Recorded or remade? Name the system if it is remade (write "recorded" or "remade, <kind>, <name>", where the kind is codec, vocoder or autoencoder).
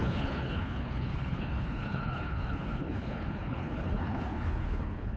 remade, codec, HILCodec